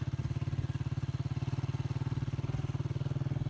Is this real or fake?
real